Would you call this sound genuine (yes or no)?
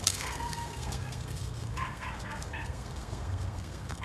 no